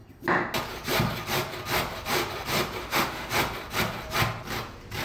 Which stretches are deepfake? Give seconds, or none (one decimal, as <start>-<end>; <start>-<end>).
2.8-3.3

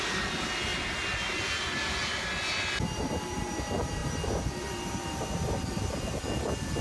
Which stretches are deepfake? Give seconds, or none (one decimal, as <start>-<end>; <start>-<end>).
none

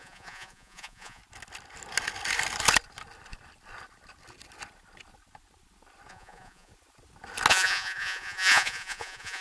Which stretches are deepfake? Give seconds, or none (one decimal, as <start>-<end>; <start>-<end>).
0.0-1.2; 6.1-6.7; 7.5-9.4